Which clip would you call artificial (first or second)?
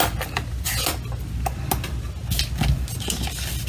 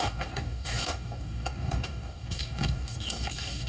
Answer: second